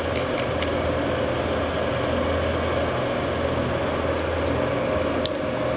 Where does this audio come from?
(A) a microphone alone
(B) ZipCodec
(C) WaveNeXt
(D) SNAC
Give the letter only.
A